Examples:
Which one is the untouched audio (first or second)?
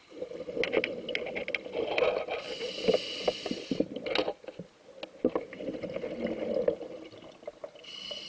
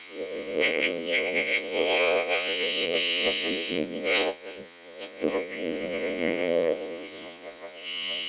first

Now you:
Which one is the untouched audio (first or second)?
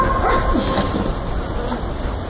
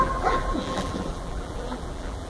first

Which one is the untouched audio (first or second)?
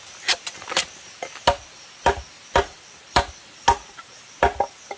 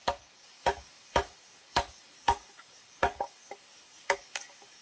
first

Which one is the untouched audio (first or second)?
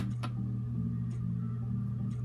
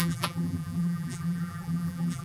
first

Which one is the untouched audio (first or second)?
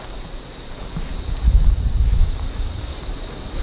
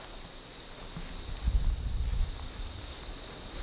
second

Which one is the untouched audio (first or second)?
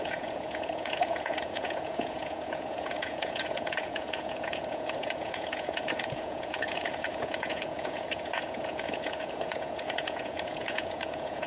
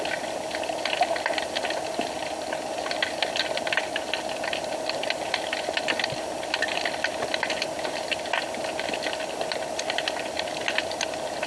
second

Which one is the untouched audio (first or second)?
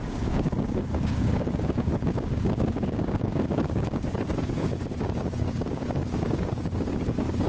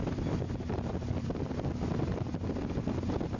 second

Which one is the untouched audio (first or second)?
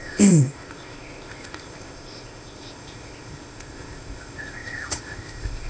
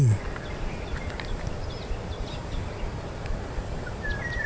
second